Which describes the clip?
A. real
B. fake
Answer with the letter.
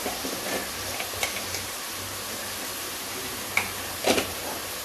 B